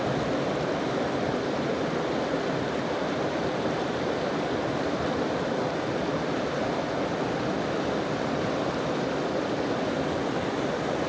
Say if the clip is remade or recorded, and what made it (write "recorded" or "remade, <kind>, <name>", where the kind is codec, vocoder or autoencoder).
recorded